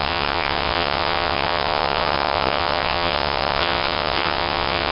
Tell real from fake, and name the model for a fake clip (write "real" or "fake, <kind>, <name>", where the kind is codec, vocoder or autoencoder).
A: fake, vocoder, WaveNeXt